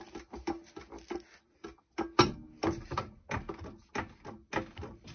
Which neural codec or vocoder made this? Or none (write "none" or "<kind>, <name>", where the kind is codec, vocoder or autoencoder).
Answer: none